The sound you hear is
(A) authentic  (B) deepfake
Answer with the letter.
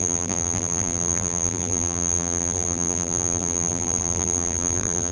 B